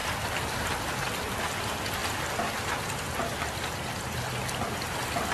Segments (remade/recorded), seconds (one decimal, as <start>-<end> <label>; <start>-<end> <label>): 0.0-0.7 remade; 0.7-5.3 recorded